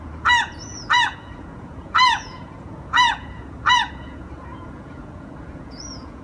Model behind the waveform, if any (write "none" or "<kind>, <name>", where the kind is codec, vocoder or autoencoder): vocoder, Vocos